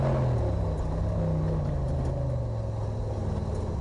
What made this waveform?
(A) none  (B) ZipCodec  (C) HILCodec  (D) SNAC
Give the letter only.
A